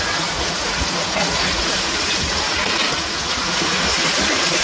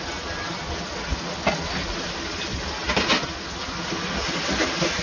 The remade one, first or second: first